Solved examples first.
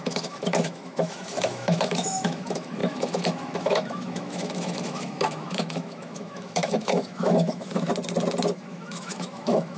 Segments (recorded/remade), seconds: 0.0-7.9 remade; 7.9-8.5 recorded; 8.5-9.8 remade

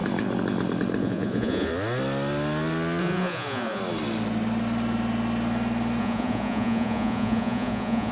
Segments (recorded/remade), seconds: 0.0-1.0 recorded; 1.0-1.7 remade; 1.7-3.0 recorded; 3.0-3.8 remade; 3.8-6.0 recorded; 6.0-8.1 remade

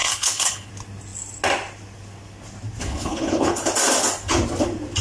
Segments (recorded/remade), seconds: 0.0-0.7 remade; 0.7-2.8 recorded; 2.8-3.6 remade; 3.6-5.0 recorded

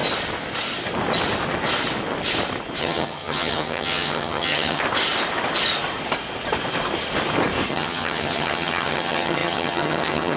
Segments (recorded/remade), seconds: 0.0-2.8 recorded; 2.8-4.8 remade; 4.8-7.7 recorded; 7.7-10.4 remade

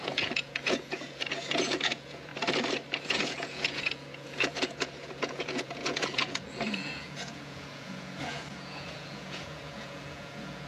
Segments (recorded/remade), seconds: 0.0-2.3 remade; 2.3-3.0 recorded; 3.0-10.7 remade

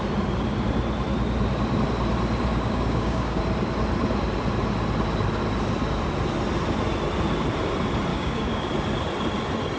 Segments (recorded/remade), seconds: 0.0-2.5 recorded; 2.5-3.4 remade; 3.4-8.1 recorded; 8.1-8.7 remade; 8.7-9.8 recorded

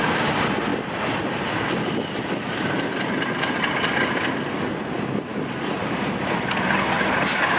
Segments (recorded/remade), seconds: 0.0-7.6 recorded